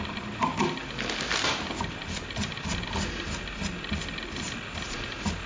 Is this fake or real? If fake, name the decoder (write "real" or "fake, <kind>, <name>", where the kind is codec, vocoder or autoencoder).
real